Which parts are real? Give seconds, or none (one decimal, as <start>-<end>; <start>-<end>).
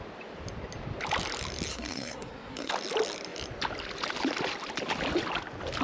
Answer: 0.0-1.7; 2.7-5.8